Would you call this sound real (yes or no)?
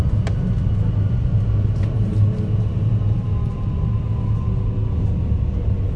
yes